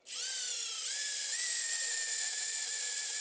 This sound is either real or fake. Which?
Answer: real